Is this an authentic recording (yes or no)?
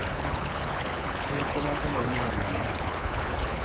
no